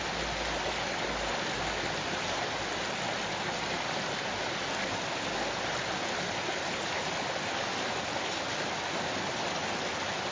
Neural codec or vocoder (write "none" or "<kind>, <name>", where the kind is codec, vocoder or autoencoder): none